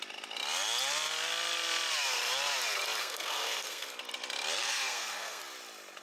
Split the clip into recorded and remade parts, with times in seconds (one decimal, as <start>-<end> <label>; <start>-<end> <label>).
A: 0.0-3.0 recorded; 3.0-3.9 remade; 3.9-4.6 recorded; 4.6-5.4 remade; 5.4-6.0 recorded